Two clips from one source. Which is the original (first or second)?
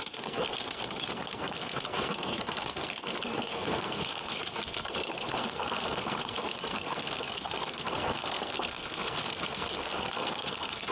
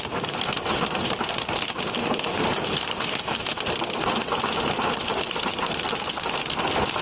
second